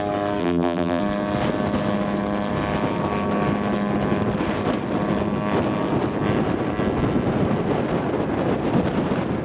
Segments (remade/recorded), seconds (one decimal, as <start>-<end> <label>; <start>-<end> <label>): 0.0-0.4 recorded; 0.4-1.0 remade; 1.0-9.4 recorded